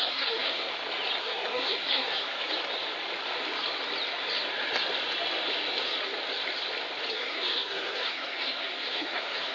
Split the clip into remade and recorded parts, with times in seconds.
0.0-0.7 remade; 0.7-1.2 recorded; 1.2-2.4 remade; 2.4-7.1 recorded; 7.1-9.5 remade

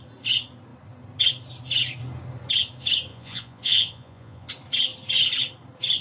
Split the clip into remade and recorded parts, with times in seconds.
0.0-3.1 recorded; 3.1-4.5 remade; 4.5-6.0 recorded

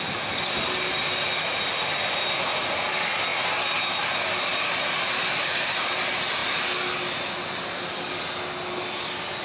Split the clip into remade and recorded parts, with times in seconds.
0.0-9.4 recorded

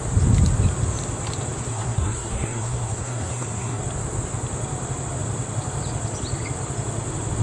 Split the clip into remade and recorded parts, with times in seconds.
0.0-1.7 recorded; 1.7-3.8 remade; 3.8-7.4 recorded

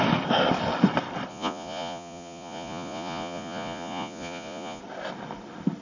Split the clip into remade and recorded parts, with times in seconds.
0.0-1.3 recorded; 1.3-4.8 remade; 4.8-5.8 recorded

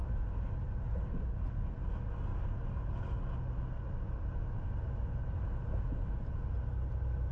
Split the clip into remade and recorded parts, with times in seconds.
0.0-7.3 recorded

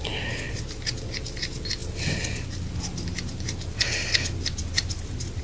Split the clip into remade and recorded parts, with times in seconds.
0.0-5.4 recorded